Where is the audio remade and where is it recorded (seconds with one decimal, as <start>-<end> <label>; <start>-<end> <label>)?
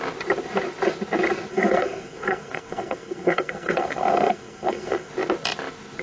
0.0-1.5 recorded; 1.5-5.1 remade; 5.1-6.0 recorded